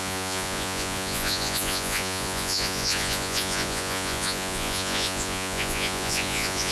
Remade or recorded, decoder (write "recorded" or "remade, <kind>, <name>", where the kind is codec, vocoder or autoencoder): remade, vocoder, Vocos